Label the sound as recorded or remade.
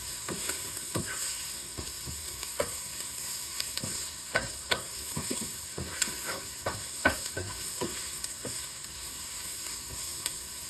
remade